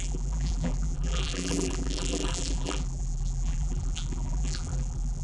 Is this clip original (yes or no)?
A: no